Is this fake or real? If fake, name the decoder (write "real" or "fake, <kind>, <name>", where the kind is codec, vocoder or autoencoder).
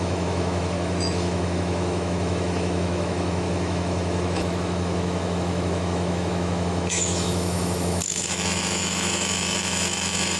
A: fake, autoencoder, DAC-VAE